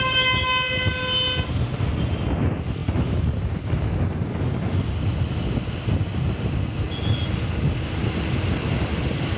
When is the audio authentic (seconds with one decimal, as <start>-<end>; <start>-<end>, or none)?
0.0-9.4